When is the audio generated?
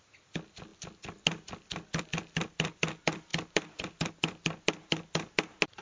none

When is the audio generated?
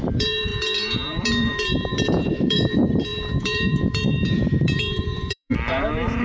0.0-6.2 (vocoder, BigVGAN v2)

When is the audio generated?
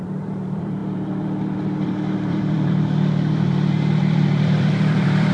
0.0-5.3 (vocoder, BigVGAN v2)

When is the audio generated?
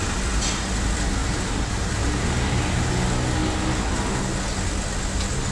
1.2-2.9 (vocoder, BigVGAN v2)